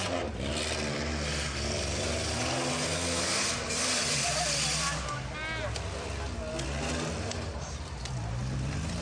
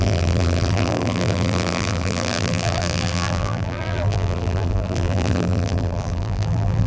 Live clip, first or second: first